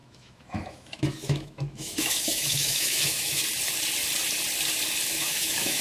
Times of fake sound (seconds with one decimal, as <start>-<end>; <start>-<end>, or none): 0.0-3.4; 5.1-5.8